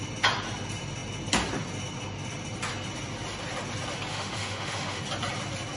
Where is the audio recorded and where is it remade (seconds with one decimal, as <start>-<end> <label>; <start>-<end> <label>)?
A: 0.0-4.1 recorded; 4.1-5.0 remade; 5.0-5.8 recorded